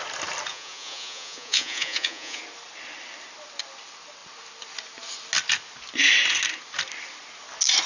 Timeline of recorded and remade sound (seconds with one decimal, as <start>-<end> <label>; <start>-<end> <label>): 0.0-0.5 recorded; 0.5-2.4 remade; 2.4-7.9 recorded